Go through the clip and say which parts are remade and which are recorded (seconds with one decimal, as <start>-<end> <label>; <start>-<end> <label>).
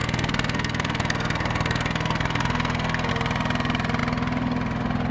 0.0-3.1 remade; 3.1-5.1 recorded